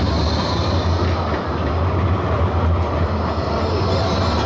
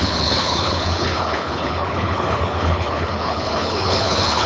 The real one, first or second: first